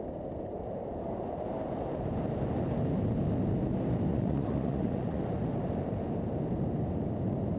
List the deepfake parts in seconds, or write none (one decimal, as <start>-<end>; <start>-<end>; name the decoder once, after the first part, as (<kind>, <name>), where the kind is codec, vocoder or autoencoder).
4.1-5.2 (vocoder, Vocos)